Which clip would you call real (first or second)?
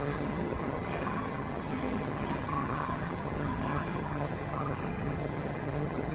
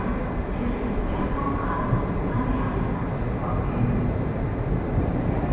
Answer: second